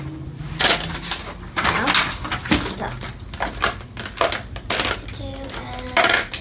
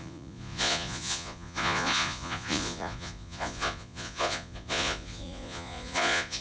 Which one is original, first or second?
first